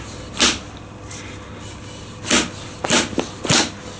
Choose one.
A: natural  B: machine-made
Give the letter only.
A